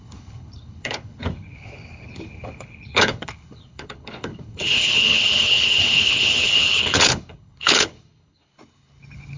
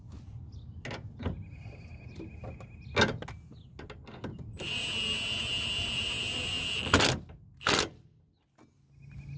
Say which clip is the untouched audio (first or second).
second